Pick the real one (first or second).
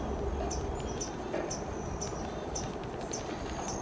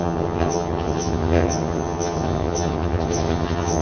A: first